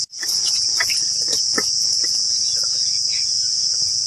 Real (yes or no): no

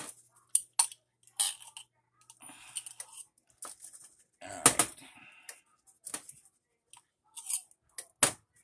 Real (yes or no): yes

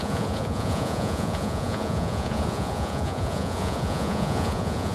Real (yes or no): no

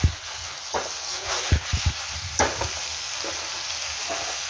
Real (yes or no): yes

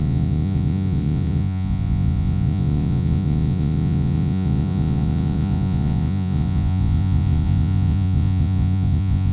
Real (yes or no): no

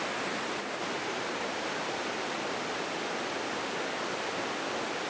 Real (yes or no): yes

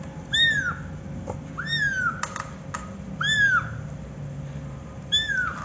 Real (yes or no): yes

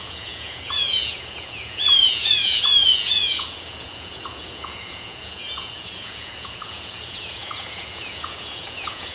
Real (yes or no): no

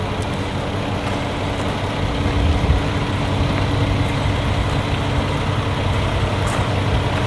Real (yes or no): yes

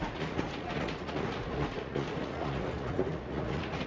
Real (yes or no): no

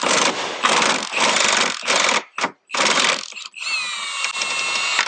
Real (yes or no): yes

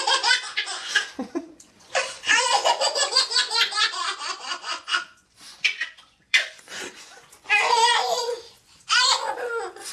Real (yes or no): no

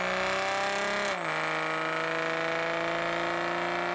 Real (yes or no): yes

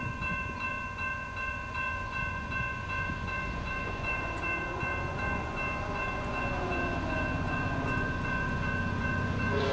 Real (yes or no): no